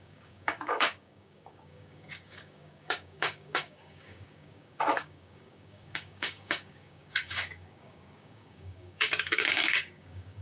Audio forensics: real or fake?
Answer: fake